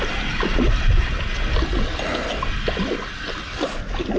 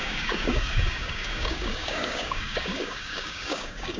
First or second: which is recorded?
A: first